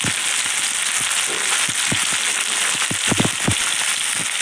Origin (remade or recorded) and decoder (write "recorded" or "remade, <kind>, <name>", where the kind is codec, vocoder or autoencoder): recorded